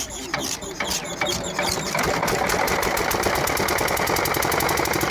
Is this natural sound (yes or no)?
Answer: yes